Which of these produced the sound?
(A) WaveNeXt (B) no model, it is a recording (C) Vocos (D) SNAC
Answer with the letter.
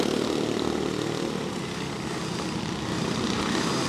B